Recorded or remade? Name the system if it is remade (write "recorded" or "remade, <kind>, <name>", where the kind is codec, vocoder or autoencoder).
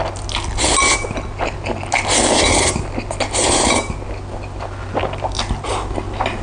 recorded